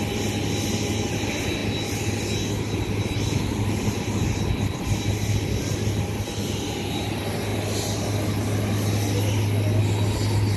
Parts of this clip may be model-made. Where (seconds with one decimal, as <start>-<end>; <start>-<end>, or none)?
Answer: none